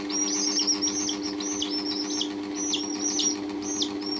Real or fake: real